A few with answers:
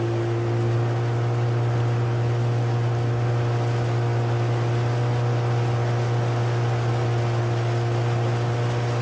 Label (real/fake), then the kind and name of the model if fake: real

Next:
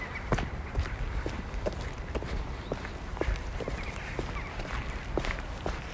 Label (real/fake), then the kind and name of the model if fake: real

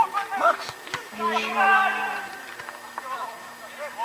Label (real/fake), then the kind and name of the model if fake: real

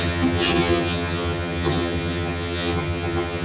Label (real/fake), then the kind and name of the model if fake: fake, vocoder, HiFi-GAN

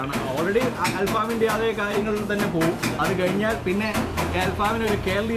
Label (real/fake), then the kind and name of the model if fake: real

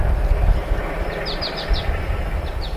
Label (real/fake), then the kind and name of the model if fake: real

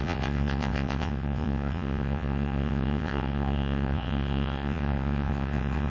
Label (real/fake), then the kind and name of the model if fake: fake, vocoder, WaveNeXt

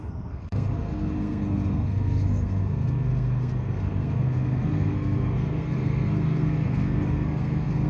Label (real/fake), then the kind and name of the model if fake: fake, codec, SNAC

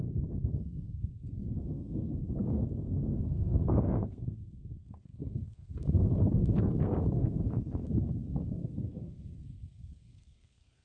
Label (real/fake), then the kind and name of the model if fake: fake, codec, SNAC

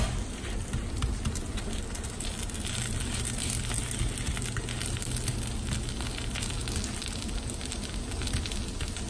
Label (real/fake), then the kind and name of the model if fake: real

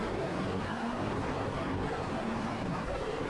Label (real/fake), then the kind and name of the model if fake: fake, codec, SNAC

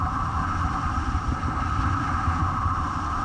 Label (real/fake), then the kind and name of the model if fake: real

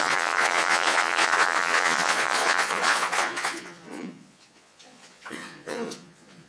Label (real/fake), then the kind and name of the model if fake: fake, vocoder, Vocos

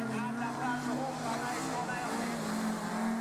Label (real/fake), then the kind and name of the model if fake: real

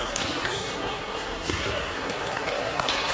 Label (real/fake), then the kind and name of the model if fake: fake, codec, SNAC